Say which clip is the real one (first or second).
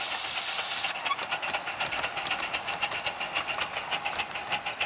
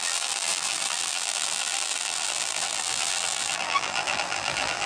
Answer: first